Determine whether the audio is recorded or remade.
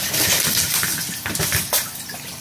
recorded